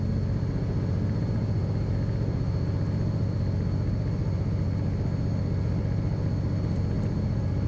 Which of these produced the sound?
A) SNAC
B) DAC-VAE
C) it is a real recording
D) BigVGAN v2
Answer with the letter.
C